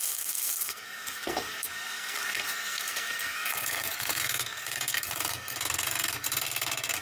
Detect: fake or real fake